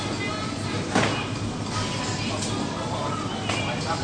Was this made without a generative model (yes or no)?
yes